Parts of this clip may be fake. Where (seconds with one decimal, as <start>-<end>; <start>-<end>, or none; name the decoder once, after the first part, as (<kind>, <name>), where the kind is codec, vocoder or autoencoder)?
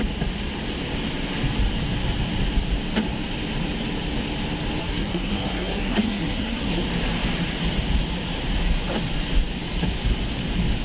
4.8-6.8 (codec, SNAC)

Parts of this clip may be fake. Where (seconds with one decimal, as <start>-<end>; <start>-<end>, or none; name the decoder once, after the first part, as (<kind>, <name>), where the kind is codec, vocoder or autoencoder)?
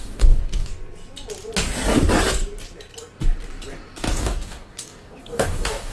0.0-0.7 (codec, DAC); 4.2-5.9